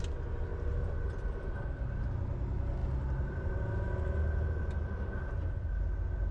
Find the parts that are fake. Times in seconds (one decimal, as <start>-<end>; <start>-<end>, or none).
none